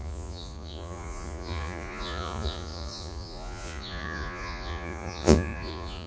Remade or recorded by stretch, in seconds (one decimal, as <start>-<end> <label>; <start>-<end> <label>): 0.0-6.1 remade